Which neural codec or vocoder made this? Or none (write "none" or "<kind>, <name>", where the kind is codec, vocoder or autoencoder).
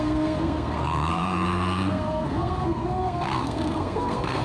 codec, SNAC